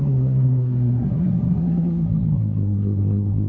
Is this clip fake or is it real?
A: fake